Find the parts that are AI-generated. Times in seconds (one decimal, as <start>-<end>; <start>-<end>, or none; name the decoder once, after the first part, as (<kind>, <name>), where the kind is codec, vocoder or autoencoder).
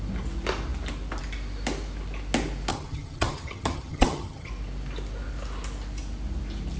2.7-4.5 (vocoder, HiFi-GAN)